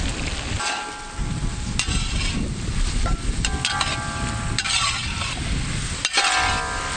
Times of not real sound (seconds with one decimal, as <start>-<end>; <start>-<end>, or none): none